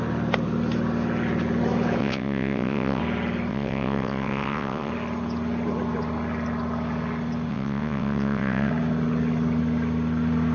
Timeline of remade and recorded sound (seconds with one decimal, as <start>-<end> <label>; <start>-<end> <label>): 0.0-2.0 recorded; 2.0-3.0 remade; 3.0-3.5 recorded; 3.5-4.9 remade; 4.9-7.5 recorded; 7.5-8.7 remade; 8.7-10.5 recorded